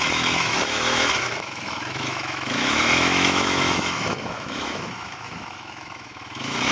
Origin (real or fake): fake